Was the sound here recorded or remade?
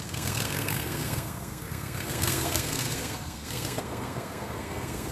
remade